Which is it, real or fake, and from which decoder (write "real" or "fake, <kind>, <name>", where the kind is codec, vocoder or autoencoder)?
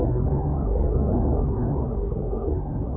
fake, codec, SNAC